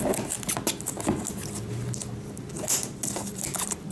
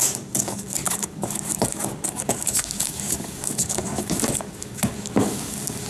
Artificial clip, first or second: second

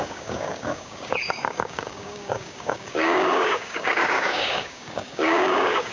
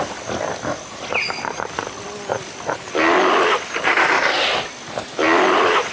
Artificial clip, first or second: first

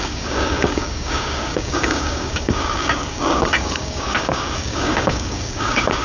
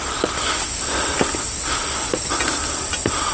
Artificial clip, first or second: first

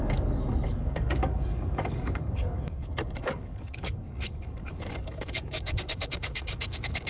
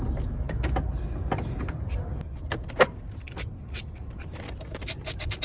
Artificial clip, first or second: first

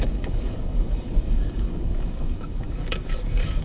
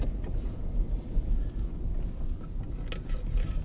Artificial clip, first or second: first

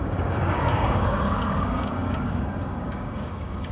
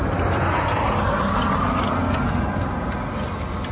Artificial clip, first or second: first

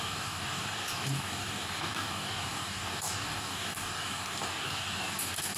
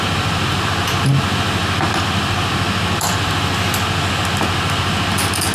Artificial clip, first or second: first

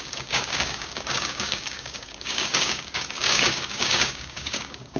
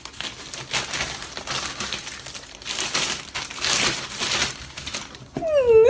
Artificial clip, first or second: first